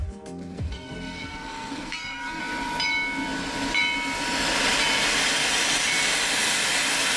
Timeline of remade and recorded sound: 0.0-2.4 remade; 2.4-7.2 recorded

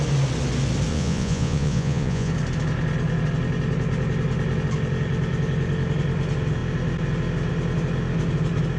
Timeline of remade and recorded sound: 0.0-0.9 recorded; 0.9-2.3 remade; 2.3-8.8 recorded

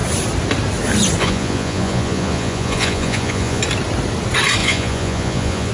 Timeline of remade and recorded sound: 0.0-1.2 recorded; 1.2-3.6 remade; 3.6-4.6 recorded; 4.6-5.7 remade